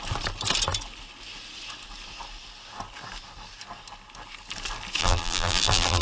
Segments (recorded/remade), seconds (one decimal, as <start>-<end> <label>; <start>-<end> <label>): 0.0-5.0 recorded; 5.0-6.0 remade